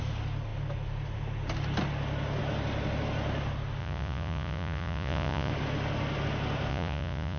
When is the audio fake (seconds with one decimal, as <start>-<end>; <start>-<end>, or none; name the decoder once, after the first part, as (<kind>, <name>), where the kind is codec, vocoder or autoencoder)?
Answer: 3.8-5.5 (vocoder, Vocos); 6.7-7.4